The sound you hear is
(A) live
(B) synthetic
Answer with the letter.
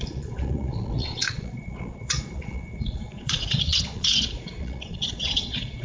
B